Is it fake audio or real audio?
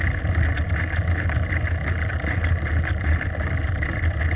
real